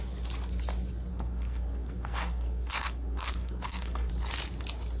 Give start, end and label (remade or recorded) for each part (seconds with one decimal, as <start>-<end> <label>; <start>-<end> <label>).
0.0-1.1 recorded; 1.1-4.1 remade; 4.1-5.0 recorded